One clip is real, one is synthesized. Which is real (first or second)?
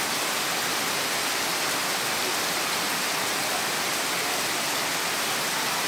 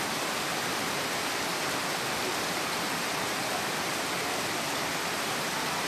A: first